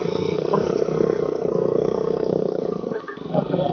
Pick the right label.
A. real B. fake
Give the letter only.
B